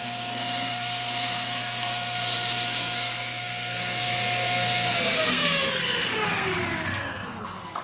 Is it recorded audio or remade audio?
remade